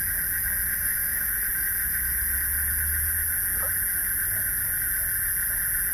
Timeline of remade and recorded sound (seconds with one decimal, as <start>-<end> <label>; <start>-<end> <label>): 0.0-0.7 recorded; 0.7-1.3 remade; 1.3-5.9 recorded